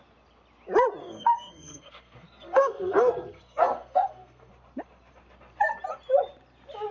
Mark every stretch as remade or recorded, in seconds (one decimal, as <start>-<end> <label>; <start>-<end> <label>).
0.0-1.0 recorded; 1.0-4.5 remade; 4.5-6.9 recorded